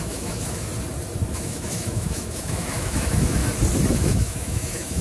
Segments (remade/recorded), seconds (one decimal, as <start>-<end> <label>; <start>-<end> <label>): 0.0-0.7 remade; 0.7-1.3 recorded; 1.3-3.4 remade; 3.4-3.9 recorded; 3.9-5.0 remade